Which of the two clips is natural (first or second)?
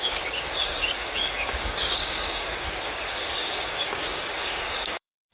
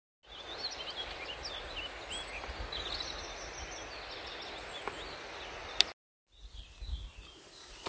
second